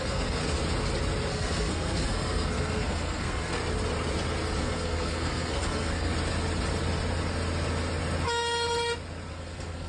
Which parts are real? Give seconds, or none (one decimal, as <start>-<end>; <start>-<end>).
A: 0.4-1.3; 3.6-4.6; 6.1-9.3